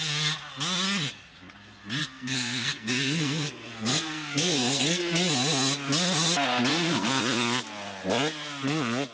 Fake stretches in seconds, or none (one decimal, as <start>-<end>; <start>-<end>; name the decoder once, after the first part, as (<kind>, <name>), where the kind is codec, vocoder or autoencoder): 2.0-5.0 (codec, SNAC); 6.7-7.2